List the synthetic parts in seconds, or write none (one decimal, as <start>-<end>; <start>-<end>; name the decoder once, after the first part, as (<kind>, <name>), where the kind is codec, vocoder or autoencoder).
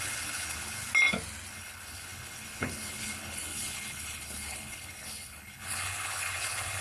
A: 0.0-0.9 (codec, HILCodec); 1.5-6.8